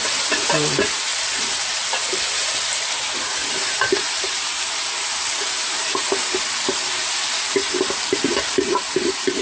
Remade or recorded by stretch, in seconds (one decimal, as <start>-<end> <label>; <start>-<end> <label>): 0.0-1.1 remade; 1.1-2.2 recorded; 2.2-9.4 remade